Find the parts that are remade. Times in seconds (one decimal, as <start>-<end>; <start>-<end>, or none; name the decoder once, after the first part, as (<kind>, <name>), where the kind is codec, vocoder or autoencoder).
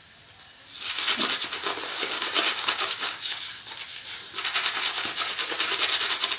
1.9-3.5 (codec, DAC)